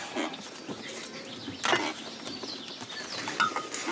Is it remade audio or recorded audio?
recorded